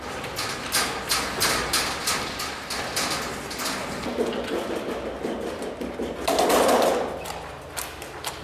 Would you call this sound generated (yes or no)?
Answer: no